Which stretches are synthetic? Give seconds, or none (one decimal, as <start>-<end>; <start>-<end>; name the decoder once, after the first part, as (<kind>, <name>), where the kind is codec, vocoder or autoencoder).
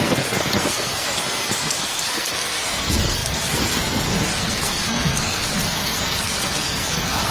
0.0-7.3 (codec, SNAC)